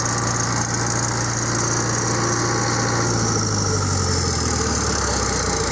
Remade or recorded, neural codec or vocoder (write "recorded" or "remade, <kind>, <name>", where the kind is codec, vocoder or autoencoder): recorded